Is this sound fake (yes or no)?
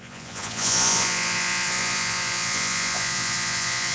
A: yes